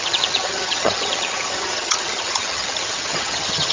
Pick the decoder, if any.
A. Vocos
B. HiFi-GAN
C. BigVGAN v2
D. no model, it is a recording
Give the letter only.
B